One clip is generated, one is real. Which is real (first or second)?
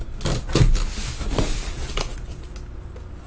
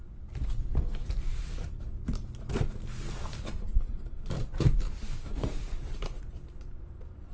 first